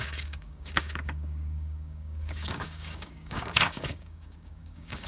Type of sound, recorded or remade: remade